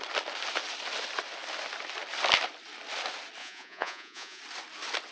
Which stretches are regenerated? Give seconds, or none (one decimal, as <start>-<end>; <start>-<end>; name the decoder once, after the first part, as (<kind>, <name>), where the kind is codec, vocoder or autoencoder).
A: 3.4-4.4 (vocoder, Vocos)